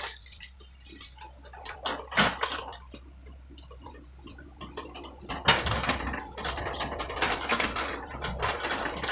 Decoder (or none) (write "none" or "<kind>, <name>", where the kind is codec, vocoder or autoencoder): none